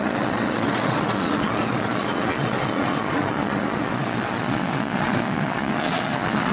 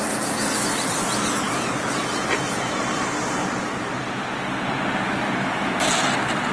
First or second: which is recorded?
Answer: second